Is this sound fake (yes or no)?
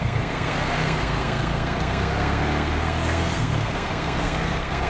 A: yes